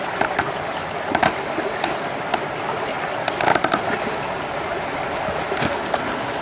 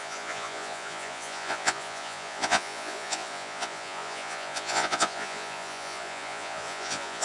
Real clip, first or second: first